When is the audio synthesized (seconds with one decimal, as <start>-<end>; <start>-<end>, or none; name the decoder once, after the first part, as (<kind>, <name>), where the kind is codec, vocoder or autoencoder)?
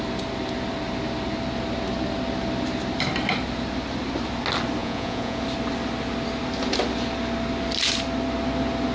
4.8-5.4 (vocoder, Vocos)